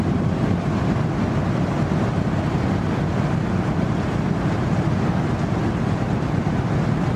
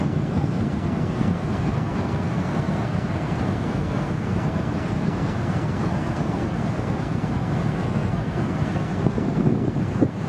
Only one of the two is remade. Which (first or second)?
second